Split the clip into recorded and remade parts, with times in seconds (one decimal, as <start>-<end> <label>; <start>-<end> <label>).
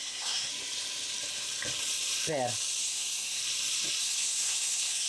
0.0-0.5 remade; 0.5-2.8 recorded; 2.8-3.4 remade; 3.4-4.0 recorded; 4.0-5.1 remade